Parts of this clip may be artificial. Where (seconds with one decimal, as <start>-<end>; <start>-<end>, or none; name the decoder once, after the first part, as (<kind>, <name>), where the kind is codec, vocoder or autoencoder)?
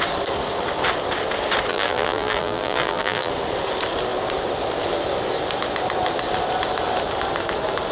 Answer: 1.7-3.3 (vocoder, BigVGAN v2)